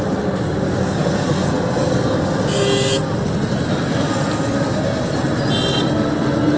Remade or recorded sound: recorded